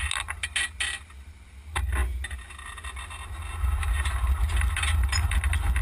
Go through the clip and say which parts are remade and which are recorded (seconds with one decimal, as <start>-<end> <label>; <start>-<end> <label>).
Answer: 0.0-5.8 recorded